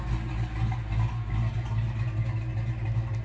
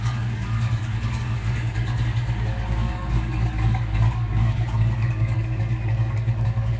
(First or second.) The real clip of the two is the first